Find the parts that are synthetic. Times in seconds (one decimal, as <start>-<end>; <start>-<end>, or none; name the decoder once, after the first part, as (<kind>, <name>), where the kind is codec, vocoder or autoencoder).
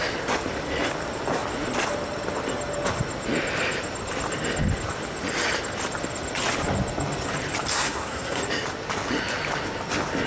7.7-8.4 (codec, SNAC)